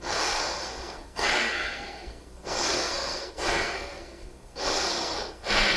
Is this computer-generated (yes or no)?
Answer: yes